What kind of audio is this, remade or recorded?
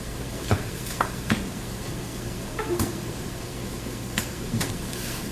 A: remade